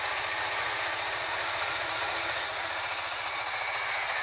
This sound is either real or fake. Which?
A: fake